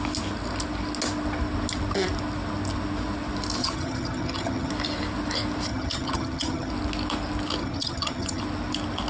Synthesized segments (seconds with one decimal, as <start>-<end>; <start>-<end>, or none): 3.6-4.7; 5.7-6.7; 7.6-8.4